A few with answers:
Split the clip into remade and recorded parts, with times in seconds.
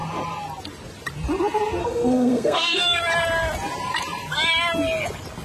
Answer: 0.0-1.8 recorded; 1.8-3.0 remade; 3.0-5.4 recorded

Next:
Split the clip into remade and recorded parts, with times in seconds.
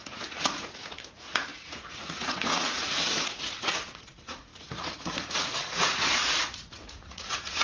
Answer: 0.0-7.6 remade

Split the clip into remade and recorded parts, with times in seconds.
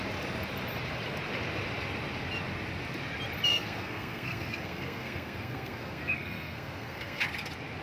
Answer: 0.0-3.5 recorded; 3.5-7.2 remade; 7.2-7.8 recorded